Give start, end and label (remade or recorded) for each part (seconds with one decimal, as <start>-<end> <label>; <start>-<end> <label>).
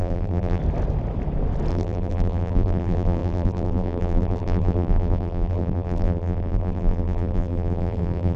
0.0-0.6 remade; 0.6-1.7 recorded; 1.7-8.4 remade